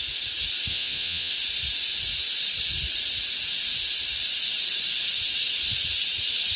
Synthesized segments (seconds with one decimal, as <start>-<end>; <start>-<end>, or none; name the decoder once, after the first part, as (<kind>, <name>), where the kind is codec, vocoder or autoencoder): 0.7-1.3 (vocoder, Vocos)